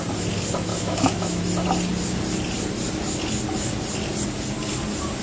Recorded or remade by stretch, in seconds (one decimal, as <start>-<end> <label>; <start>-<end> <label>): 0.0-0.7 recorded; 0.7-1.4 remade; 1.4-5.2 recorded

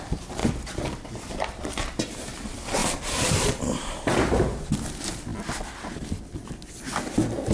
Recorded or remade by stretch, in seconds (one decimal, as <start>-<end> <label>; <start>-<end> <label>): 0.0-2.8 recorded; 2.8-4.7 remade; 4.7-7.5 recorded

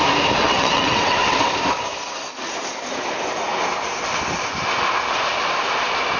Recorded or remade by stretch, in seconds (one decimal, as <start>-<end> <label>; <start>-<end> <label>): 0.0-0.4 recorded; 0.4-1.5 remade; 1.5-6.2 recorded

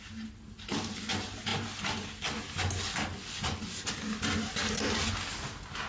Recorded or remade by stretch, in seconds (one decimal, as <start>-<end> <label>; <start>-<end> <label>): 0.0-5.9 recorded

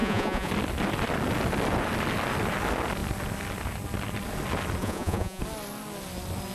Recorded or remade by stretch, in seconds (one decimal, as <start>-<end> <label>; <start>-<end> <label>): 0.0-0.5 remade; 0.5-4.8 recorded; 4.8-5.4 remade; 5.4-6.5 recorded

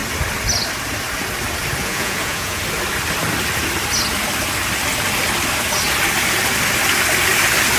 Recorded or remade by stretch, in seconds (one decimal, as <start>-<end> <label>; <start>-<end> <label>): 0.0-1.8 recorded; 1.8-2.6 remade; 2.6-7.8 recorded